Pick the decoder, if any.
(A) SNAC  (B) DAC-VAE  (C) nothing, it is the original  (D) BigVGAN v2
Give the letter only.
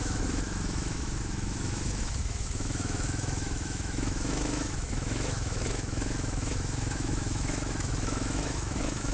B